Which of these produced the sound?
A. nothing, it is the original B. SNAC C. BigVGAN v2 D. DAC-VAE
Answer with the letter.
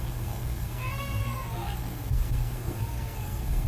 B